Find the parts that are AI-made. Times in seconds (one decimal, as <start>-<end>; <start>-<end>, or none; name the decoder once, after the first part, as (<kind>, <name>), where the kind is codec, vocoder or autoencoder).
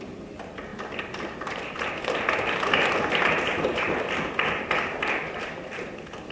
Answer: 0.0-6.3 (vocoder, BigVGAN v2)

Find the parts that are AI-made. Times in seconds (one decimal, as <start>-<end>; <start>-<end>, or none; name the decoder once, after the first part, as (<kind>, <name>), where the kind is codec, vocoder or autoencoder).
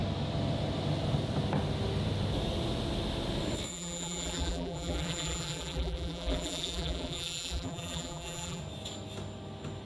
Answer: 3.7-8.6 (vocoder, BigVGAN v2)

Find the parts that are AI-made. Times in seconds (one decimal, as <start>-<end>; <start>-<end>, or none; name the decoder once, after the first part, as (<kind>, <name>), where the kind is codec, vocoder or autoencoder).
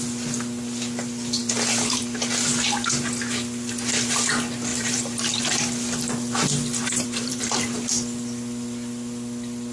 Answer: 1.4-2.0 (vocoder, BigVGAN v2); 4.7-5.4; 6.8-7.7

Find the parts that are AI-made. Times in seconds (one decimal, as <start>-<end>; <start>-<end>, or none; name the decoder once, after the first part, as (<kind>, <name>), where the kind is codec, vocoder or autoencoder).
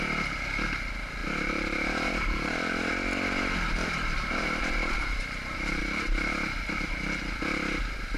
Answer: 1.2-2.9 (vocoder, BigVGAN v2); 3.8-5.8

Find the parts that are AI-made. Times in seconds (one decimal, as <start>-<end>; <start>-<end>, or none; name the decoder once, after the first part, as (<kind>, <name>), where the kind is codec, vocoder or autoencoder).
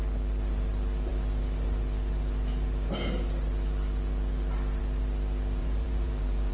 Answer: 5.6-6.5 (vocoder, BigVGAN v2)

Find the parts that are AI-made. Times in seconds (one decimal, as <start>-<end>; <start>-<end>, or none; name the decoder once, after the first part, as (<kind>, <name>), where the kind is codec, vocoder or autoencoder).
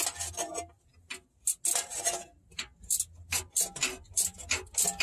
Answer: none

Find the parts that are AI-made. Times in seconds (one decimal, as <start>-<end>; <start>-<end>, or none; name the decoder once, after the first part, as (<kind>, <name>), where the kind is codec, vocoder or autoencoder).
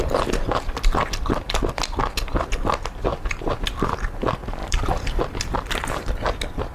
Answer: 3.1-3.6 (vocoder, BigVGAN v2); 4.6-5.2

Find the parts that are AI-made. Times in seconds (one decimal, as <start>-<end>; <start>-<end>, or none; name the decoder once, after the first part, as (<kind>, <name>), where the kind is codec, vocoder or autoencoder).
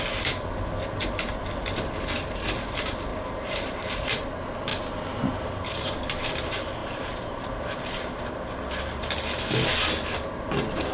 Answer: 3.1-4.0 (vocoder, BigVGAN v2); 6.8-8.3